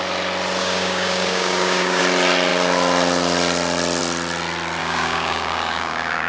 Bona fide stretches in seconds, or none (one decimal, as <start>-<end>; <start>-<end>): 0.0-0.6; 2.0-4.8

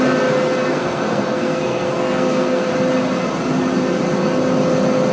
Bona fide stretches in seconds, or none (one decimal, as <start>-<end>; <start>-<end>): 0.0-0.7; 2.7-5.1

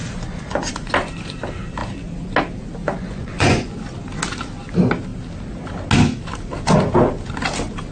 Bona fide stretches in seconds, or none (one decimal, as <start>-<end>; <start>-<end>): 0.9-2.8; 3.7-7.9

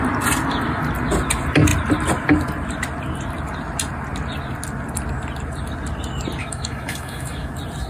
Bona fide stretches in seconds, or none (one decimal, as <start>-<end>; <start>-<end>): 0.0-6.4; 7.5-7.9

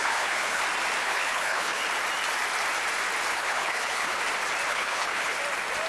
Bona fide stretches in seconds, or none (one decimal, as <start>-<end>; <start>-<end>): 0.6-1.0; 1.8-3.3; 4.2-4.7; 5.4-5.9